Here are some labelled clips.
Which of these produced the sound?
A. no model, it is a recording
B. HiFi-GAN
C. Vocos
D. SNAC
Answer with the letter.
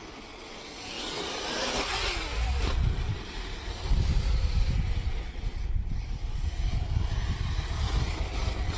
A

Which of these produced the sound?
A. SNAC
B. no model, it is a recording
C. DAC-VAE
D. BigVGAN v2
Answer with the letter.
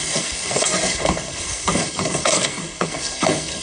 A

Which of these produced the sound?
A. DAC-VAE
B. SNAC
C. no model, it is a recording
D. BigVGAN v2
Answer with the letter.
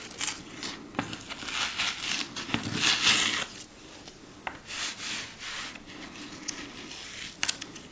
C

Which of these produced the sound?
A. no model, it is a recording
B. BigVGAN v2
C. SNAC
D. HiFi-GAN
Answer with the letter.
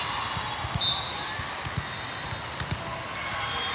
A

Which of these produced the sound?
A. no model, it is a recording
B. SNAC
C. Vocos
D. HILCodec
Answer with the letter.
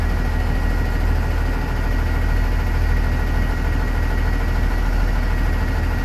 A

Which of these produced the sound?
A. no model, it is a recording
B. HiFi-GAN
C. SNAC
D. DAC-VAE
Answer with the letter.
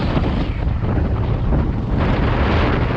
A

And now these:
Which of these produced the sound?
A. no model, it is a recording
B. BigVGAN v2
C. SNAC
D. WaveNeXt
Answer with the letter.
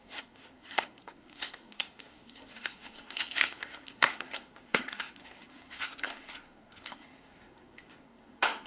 C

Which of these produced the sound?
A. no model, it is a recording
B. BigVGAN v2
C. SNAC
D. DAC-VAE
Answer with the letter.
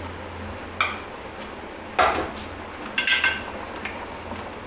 A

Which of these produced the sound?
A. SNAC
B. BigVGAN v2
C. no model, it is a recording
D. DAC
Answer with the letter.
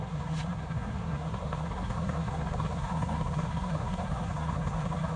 A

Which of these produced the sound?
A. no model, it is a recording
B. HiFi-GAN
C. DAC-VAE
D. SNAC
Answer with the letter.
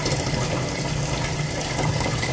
A